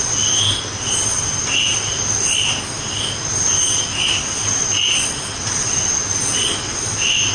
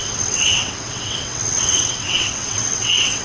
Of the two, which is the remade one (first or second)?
second